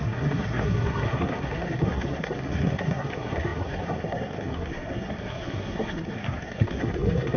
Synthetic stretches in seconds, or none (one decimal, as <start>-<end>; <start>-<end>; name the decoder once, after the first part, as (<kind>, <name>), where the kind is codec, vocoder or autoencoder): 0.0-7.4 (codec, SNAC)